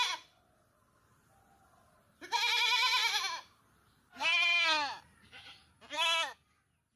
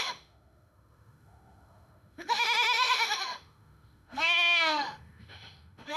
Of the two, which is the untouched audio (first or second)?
first